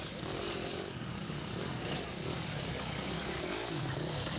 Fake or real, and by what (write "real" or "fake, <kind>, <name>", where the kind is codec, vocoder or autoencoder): fake, codec, DAC